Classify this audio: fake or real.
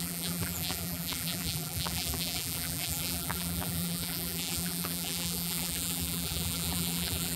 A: fake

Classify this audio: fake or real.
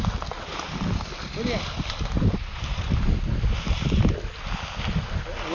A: real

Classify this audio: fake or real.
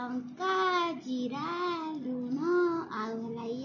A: real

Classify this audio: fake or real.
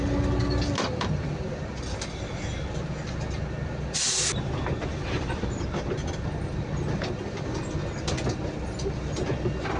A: real